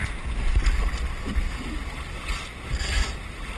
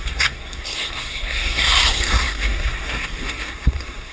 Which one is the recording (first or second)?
first